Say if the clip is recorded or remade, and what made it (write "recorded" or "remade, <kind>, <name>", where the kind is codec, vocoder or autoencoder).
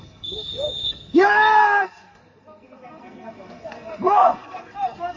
remade, codec, SNAC